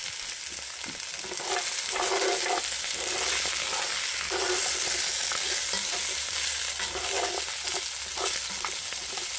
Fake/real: real